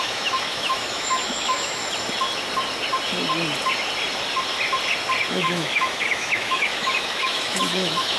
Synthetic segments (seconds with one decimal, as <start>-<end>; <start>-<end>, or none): 0.0-1.8; 5.3-8.2